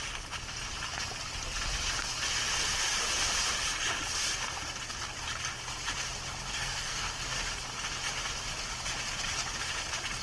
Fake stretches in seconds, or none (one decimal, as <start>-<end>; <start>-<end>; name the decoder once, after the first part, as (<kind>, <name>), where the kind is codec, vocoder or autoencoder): 6.5-7.4 (codec, SNAC)